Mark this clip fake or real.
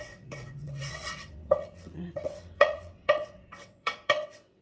fake